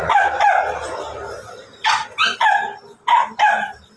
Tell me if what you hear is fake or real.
real